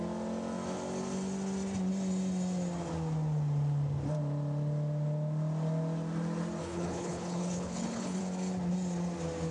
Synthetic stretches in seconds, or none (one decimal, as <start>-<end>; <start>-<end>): 6.6-8.2